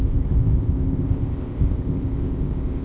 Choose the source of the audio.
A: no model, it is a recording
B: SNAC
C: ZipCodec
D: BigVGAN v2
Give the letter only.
C